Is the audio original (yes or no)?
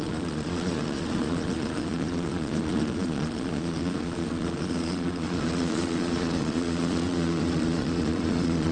no